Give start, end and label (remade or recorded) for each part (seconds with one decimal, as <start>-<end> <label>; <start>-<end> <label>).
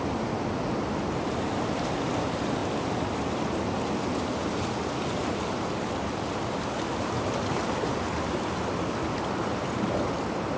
0.0-10.6 recorded